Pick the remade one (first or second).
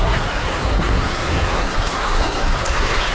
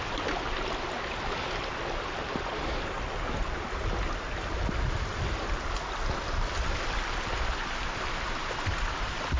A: first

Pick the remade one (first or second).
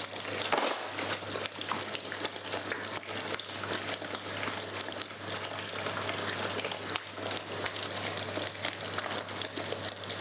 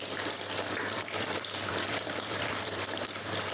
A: second